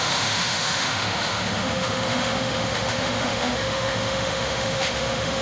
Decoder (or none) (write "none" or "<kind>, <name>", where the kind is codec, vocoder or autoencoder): autoencoder, DAC-VAE